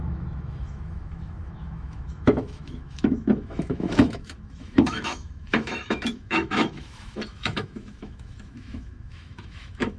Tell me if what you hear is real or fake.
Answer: fake